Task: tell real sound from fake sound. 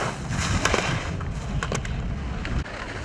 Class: real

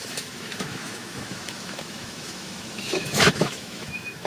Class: fake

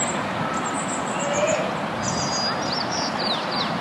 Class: real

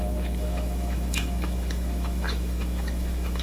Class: fake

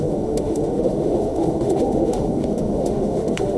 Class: fake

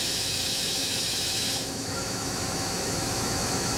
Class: fake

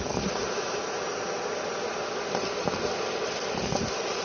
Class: real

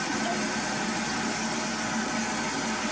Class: real